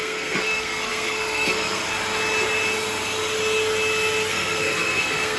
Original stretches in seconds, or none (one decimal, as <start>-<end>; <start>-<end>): 1.8-4.3